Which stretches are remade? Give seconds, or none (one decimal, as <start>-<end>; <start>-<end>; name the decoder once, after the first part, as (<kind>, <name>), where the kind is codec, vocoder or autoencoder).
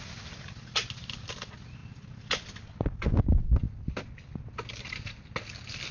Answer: none